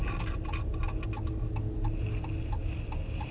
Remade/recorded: recorded